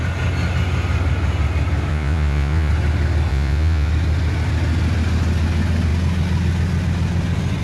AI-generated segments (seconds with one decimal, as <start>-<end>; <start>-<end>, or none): 1.9-2.7; 3.3-3.9